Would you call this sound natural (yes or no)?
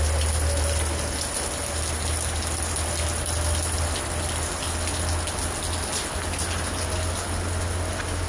yes